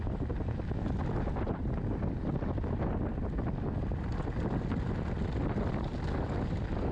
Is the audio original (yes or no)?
yes